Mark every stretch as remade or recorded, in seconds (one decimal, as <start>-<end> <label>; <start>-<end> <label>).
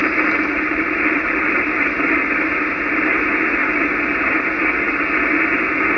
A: 0.0-2.2 remade; 2.2-3.6 recorded; 3.6-4.3 remade; 4.3-6.0 recorded